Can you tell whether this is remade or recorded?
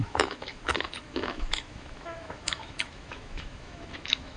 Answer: remade